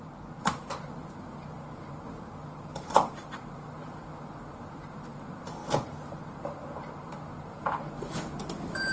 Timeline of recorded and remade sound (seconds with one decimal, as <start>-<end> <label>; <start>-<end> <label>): 0.0-5.6 remade; 5.6-6.2 recorded; 6.2-8.9 remade